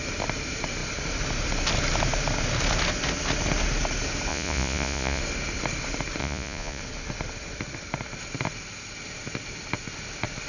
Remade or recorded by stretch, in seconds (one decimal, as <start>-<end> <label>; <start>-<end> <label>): 0.0-4.3 recorded; 4.3-5.2 remade; 5.2-6.2 recorded; 6.2-6.8 remade; 6.8-10.5 recorded